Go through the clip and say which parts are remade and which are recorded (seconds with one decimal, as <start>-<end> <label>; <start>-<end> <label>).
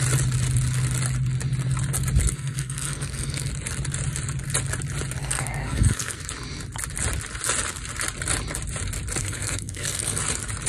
0.0-2.2 recorded; 2.2-3.5 remade; 3.5-5.2 recorded; 5.2-6.3 remade; 6.3-9.2 recorded; 9.2-10.2 remade; 10.2-10.7 recorded